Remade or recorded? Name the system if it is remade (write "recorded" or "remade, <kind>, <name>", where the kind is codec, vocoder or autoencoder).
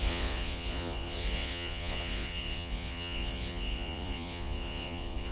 remade, vocoder, Vocos